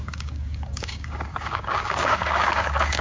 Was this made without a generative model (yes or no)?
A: no